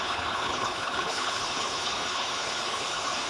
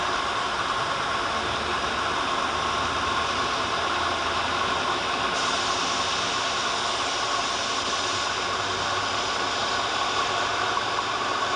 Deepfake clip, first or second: first